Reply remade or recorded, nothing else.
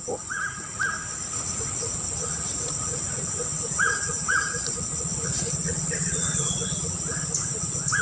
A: remade